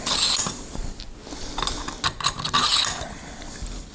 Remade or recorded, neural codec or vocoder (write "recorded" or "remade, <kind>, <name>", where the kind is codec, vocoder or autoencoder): recorded